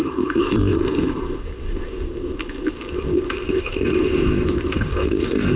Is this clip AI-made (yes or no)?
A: yes